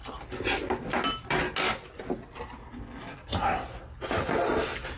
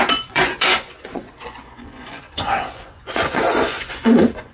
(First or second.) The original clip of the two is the first